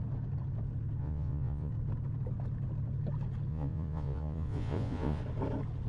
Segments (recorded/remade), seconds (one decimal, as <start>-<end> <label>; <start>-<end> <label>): 0.0-1.0 recorded; 1.0-1.7 remade; 1.7-3.5 recorded; 3.5-5.2 remade; 5.2-5.9 recorded